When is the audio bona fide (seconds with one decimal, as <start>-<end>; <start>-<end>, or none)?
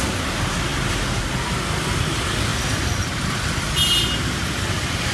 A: 0.0-5.1